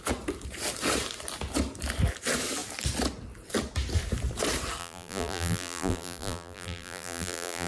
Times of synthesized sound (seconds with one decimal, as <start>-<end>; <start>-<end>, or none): 4.8-7.7